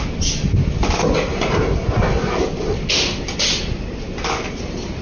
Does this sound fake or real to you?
real